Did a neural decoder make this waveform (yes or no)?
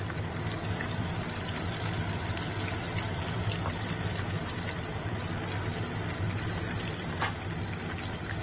no